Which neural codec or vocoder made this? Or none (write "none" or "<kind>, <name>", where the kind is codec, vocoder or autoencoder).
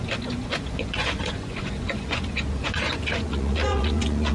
vocoder, Vocos